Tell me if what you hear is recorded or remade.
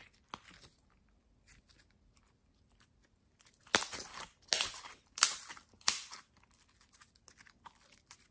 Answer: recorded